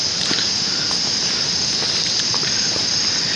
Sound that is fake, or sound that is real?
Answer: real